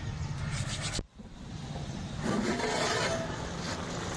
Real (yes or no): yes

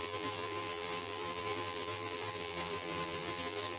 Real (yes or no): no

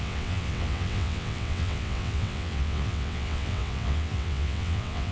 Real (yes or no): no